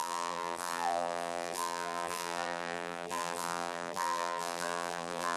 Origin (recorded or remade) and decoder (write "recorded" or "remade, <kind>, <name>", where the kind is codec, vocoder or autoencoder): remade, vocoder, BigVGAN v2